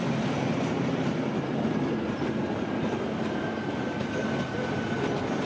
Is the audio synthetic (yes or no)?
no